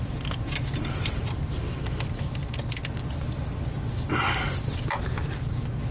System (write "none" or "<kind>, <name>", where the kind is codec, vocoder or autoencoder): none